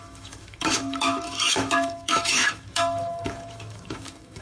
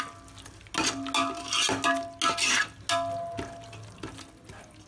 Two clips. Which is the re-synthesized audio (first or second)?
first